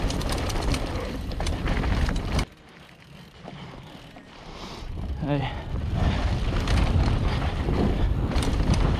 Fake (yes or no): yes